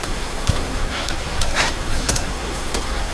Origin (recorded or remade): remade